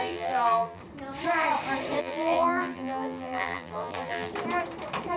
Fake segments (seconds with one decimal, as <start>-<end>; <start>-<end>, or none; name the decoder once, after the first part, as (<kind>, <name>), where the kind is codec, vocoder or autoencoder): 0.0-0.8 (vocoder, BigVGAN v2); 2.0-4.3